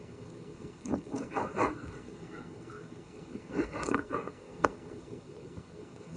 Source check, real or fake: fake